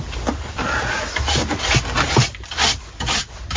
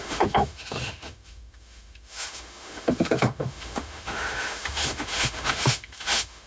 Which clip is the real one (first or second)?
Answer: first